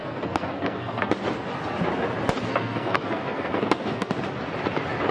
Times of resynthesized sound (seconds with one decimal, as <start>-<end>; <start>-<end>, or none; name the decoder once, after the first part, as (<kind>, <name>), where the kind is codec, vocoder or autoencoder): 0.0-1.1 (codec, SNAC); 2.5-4.1